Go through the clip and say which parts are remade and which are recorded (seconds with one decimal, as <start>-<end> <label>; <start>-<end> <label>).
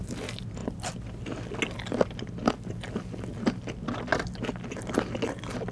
0.0-5.7 recorded